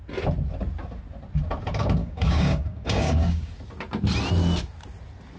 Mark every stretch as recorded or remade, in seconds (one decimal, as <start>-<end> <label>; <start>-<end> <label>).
0.0-2.0 recorded; 2.0-3.5 remade; 3.5-5.4 recorded